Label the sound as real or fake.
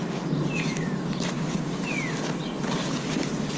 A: real